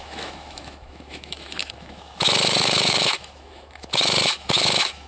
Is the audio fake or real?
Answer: fake